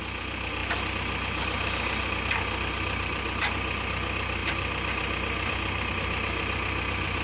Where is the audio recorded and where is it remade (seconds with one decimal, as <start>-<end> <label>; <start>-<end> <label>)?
0.0-7.2 recorded